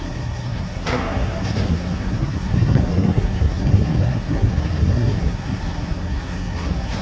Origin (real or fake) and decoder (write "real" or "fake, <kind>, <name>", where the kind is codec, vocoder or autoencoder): fake, codec, SNAC